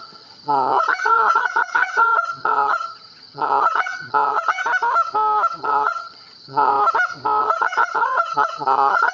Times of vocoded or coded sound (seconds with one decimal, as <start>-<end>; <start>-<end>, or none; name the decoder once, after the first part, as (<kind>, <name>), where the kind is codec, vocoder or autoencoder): 0.0-4.6 (vocoder, HiFi-GAN); 5.6-6.7; 7.4-9.1